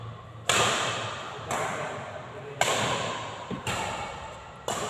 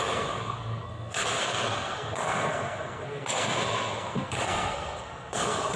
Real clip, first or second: first